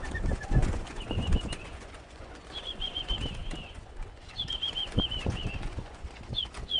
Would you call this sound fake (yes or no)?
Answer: yes